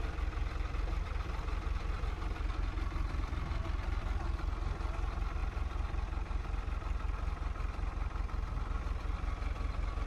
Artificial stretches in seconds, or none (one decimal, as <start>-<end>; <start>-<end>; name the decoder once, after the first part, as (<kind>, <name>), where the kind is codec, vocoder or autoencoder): none